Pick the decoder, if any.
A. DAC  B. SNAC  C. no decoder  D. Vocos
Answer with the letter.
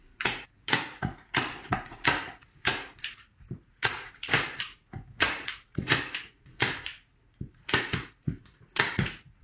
D